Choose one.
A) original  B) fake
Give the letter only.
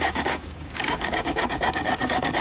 B